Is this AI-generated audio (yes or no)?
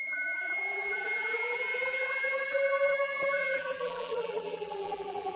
yes